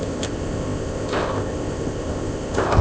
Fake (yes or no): yes